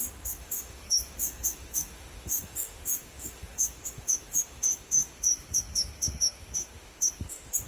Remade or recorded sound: remade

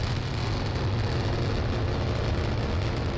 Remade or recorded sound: recorded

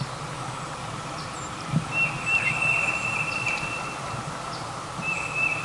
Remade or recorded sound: recorded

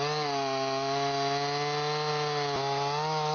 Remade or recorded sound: recorded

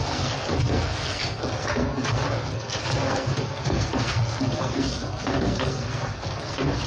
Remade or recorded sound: remade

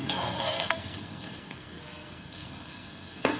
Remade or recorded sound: remade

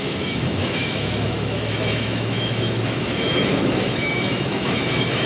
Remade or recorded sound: remade